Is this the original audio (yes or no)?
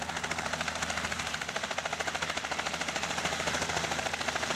no